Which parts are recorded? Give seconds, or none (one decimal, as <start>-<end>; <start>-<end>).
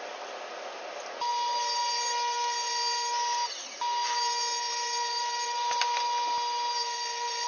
0.0-7.5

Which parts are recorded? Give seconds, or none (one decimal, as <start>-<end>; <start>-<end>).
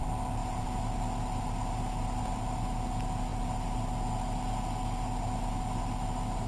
0.0-6.5